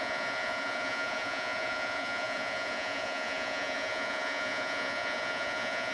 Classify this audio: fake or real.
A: fake